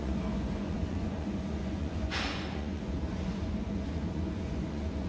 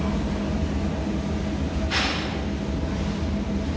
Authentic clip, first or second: second